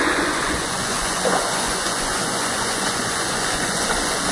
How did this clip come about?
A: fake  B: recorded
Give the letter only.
A